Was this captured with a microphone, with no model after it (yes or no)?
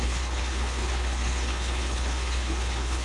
no